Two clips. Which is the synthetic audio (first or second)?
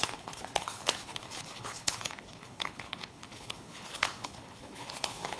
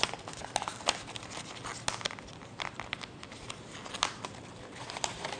first